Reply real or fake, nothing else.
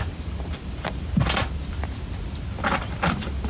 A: real